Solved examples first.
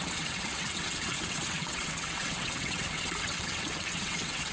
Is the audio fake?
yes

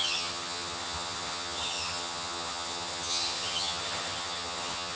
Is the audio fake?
yes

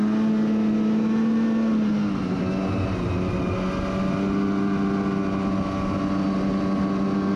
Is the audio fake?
no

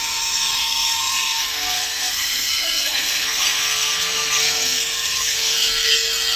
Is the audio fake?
yes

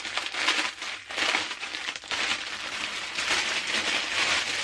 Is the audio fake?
no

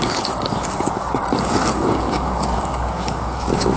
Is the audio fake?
yes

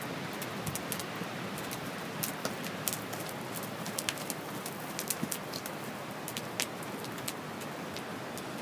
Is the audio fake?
no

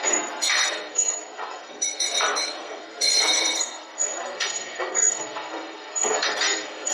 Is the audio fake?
yes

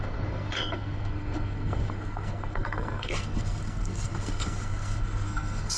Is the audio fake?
yes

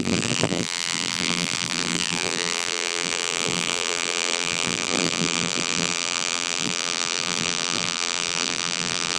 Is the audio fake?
yes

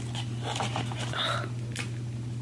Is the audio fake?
no